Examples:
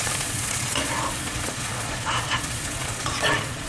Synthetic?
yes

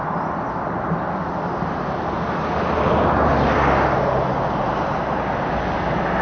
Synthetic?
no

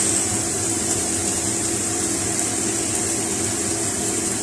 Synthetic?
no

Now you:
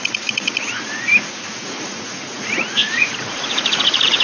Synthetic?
yes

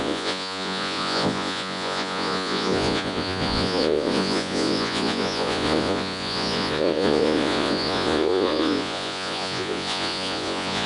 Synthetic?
yes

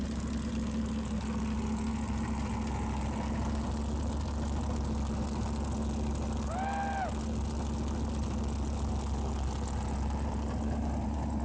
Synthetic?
no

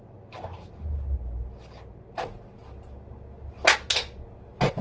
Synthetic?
no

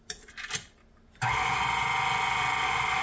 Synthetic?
no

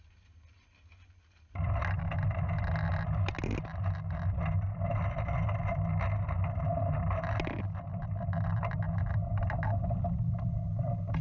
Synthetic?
no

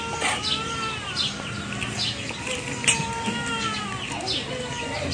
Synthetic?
no